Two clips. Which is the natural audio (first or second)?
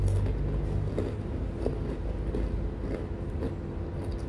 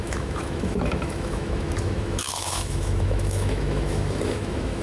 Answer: first